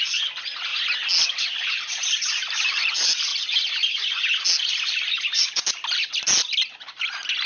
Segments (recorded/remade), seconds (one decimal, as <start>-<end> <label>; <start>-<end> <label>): 0.0-7.5 recorded